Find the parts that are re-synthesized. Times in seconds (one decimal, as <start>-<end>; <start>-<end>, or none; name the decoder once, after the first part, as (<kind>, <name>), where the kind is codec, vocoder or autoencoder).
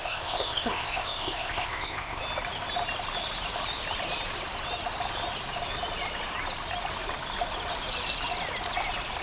0.0-2.2 (codec, ZipCodec)